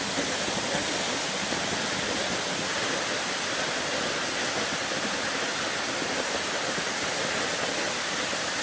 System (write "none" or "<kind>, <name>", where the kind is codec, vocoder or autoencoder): none